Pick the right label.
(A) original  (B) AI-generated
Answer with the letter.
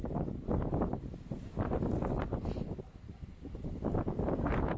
A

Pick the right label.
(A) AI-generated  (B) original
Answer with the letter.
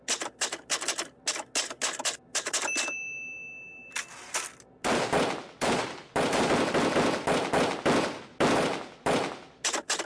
B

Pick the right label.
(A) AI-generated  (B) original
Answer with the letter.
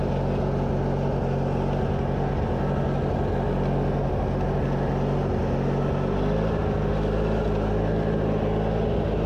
B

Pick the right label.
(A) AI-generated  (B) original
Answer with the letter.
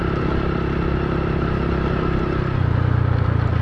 B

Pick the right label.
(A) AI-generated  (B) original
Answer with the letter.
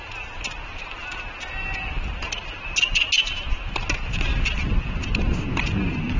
B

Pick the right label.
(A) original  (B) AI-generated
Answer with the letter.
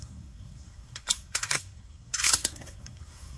B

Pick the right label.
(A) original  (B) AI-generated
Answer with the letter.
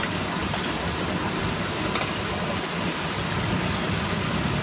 A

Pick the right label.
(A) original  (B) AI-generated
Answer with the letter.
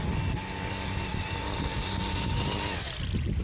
A